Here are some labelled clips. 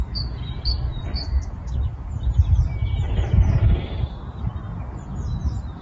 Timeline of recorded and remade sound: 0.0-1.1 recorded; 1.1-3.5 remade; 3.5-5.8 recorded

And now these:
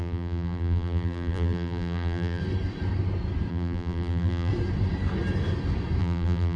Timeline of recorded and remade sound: 0.0-2.4 remade; 2.4-3.5 recorded; 3.5-4.5 remade; 4.5-6.0 recorded; 6.0-6.6 remade

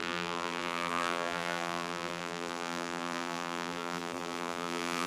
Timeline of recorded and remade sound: 0.0-5.1 remade

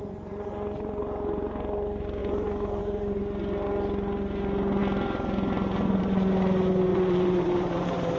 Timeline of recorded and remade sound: 0.0-2.2 recorded; 2.2-2.8 remade; 2.8-6.9 recorded; 6.9-8.2 remade

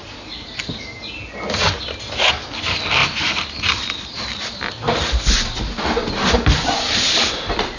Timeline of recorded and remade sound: 0.0-3.0 recorded; 3.0-4.7 remade; 4.7-7.8 recorded